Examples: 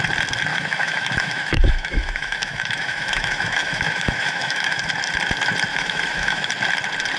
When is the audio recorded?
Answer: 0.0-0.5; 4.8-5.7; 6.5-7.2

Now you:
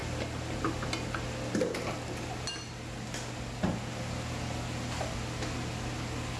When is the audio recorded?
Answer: 0.0-6.4

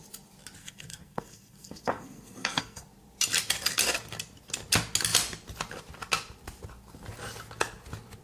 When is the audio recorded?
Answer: 0.0-0.6; 2.8-8.2